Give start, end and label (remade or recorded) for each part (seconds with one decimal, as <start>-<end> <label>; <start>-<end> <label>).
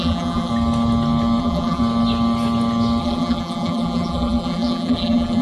0.0-0.5 remade; 0.5-1.4 recorded; 1.4-1.8 remade; 1.8-3.0 recorded; 3.0-5.4 remade